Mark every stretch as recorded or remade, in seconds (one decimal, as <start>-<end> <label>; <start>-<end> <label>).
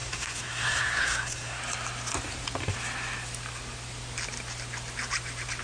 0.0-1.6 remade; 1.6-5.6 recorded